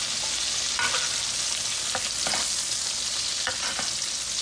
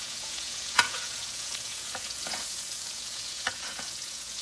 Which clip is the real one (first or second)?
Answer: first